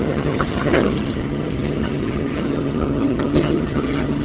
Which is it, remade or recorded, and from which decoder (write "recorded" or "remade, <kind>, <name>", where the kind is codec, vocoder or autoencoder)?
remade, vocoder, HiFi-GAN